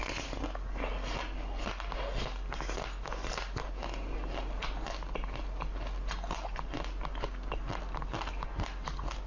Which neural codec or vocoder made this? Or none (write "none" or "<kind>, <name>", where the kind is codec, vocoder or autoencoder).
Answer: none